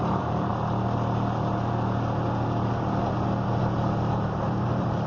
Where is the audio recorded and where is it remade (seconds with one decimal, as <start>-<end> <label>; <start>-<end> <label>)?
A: 0.0-0.5 remade; 0.5-3.6 recorded; 3.6-5.1 remade